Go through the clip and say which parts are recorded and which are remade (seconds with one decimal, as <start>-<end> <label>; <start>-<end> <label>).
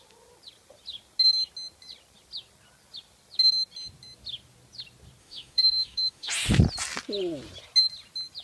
0.0-5.2 recorded; 5.2-6.3 remade; 6.3-8.4 recorded